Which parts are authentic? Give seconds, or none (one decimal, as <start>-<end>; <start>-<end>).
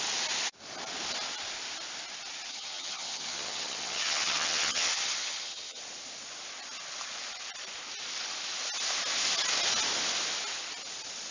0.0-2.5; 5.8-11.3